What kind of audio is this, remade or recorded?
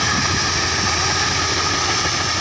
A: recorded